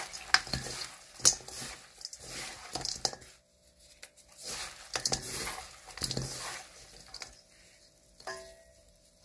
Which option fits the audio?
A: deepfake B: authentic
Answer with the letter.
B